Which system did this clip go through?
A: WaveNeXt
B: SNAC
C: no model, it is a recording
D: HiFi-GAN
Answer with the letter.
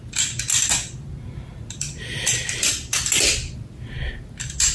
C